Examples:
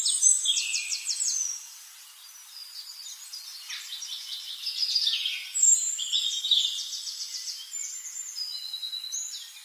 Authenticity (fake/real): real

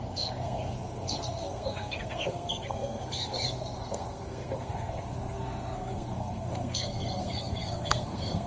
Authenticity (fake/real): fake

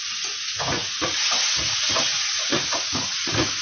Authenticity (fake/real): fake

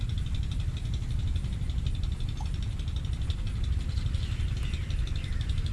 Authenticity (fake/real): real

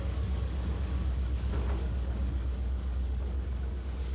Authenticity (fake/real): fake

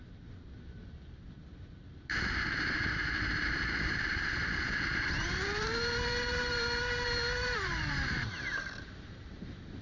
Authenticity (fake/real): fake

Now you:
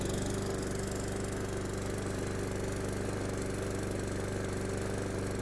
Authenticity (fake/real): real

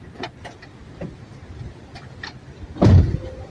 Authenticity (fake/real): real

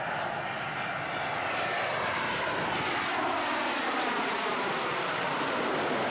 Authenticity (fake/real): real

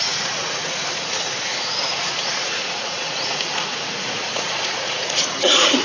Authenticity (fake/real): fake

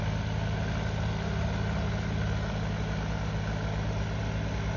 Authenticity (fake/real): real